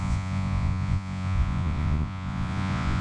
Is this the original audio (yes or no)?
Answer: no